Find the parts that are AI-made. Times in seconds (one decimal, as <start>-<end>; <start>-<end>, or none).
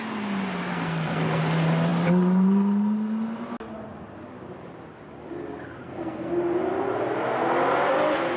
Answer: 0.7-1.4; 5.8-6.3